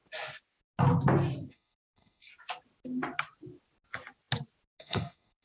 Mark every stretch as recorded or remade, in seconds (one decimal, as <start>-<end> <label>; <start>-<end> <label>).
0.0-1.5 recorded; 1.5-2.3 remade; 2.3-4.8 recorded; 4.8-5.4 remade